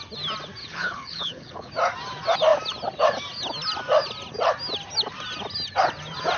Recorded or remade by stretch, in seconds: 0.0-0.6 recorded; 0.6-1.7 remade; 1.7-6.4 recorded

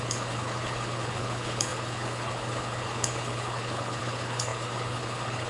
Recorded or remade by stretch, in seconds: 0.0-5.5 remade

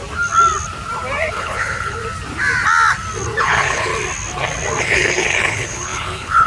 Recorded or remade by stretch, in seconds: 0.0-1.3 recorded; 1.3-2.0 remade; 2.0-3.4 recorded; 3.4-3.9 remade; 3.9-4.8 recorded; 4.8-6.5 remade

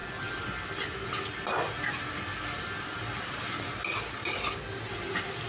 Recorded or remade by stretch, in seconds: 0.0-5.5 recorded

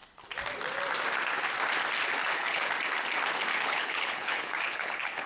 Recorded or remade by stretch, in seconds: 0.0-2.2 recorded; 2.2-2.7 remade; 2.7-3.5 recorded; 3.5-5.3 remade

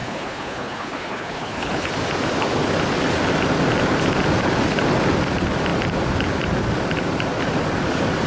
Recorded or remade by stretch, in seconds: 0.0-1.9 remade; 1.9-8.3 recorded